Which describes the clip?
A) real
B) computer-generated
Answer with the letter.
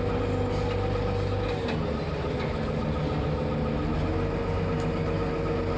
A